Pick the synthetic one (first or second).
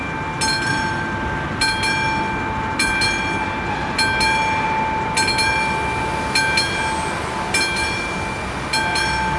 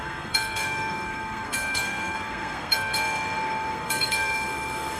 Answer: second